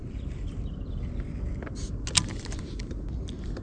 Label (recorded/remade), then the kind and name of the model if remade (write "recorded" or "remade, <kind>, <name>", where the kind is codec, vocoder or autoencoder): recorded